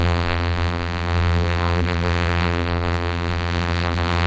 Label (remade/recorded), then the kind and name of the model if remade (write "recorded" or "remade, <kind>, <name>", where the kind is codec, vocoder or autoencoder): remade, vocoder, BigVGAN v2